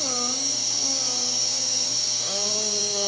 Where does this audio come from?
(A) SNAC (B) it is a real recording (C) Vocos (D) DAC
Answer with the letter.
D